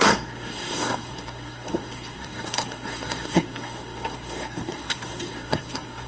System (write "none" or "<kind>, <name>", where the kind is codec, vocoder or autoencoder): codec, SNAC